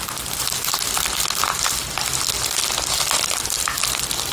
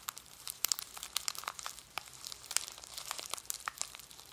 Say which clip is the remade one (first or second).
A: second